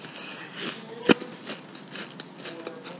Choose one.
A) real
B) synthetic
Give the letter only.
A